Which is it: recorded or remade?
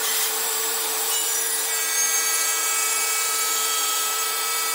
remade